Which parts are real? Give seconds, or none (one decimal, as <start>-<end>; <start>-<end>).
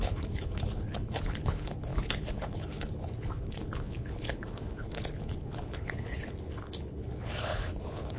none